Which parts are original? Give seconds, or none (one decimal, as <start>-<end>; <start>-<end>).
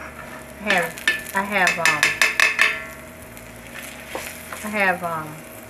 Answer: 0.0-5.7